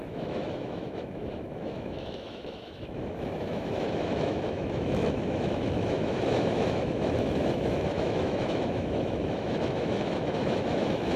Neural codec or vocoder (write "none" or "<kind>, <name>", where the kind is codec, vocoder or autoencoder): autoencoder, DAC-VAE